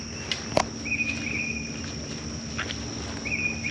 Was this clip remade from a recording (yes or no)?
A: no